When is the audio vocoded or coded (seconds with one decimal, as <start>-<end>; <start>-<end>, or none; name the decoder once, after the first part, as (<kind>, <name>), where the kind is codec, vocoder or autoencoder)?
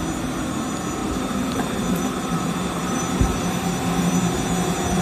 1.0-4.0 (vocoder, BigVGAN v2)